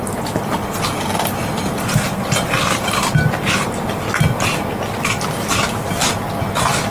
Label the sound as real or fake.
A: real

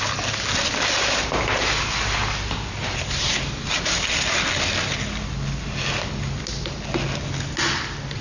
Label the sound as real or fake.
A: real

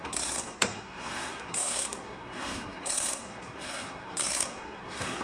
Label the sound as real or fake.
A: fake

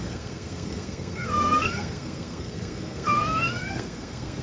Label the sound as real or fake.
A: fake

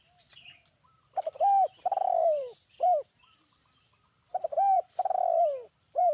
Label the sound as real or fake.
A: fake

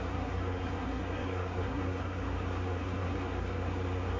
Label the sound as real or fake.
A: fake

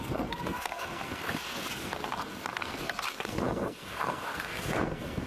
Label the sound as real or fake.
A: fake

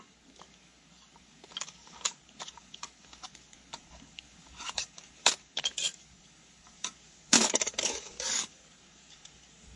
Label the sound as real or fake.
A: fake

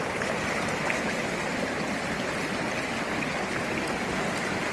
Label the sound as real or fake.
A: real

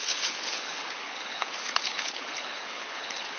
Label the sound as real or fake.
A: fake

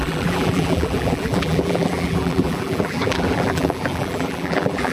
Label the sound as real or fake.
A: fake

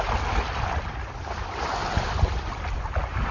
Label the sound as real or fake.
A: real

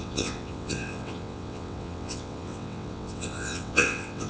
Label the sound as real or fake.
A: fake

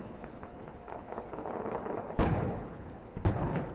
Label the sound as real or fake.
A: fake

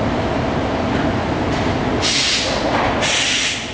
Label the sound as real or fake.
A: real